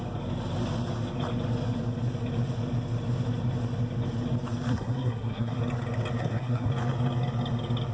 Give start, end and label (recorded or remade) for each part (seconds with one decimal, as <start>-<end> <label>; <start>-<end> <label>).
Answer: 0.0-4.7 recorded; 4.7-5.6 remade; 5.6-6.2 recorded; 6.2-6.7 remade; 6.7-7.9 recorded